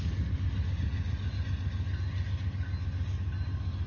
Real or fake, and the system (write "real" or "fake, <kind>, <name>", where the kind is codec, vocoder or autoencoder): real